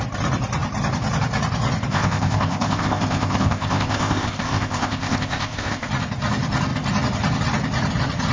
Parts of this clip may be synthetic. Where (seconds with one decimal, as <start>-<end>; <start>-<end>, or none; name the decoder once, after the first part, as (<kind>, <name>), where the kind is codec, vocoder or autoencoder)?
1.9-5.9 (codec, ZipCodec)